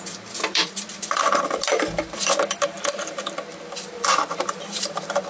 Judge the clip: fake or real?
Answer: fake